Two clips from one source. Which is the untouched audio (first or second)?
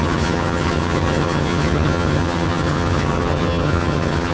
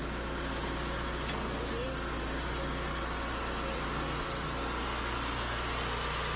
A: second